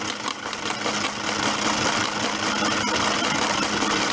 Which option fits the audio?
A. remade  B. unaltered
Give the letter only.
B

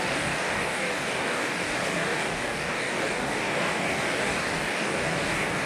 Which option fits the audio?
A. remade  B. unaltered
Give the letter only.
A